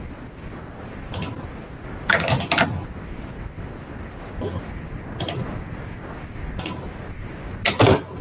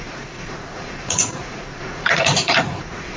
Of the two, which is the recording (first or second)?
first